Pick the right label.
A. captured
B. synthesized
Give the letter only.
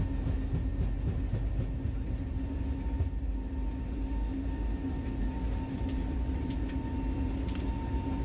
A